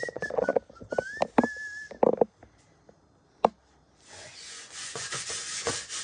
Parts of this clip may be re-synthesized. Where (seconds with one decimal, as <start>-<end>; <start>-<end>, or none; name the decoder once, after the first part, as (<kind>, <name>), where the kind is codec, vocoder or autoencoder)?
0.0-0.5 (vocoder, Vocos); 4.1-6.0